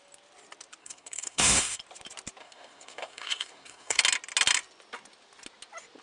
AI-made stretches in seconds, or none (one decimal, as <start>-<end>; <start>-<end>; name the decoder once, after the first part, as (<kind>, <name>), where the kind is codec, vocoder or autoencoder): 0.8-1.8 (codec, SNAC); 2.4-4.0